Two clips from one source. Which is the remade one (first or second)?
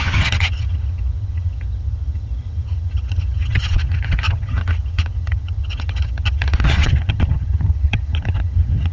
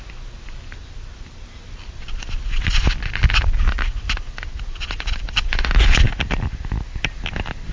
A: first